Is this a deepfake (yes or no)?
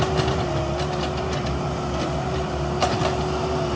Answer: no